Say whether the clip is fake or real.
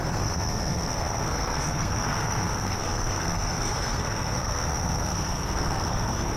fake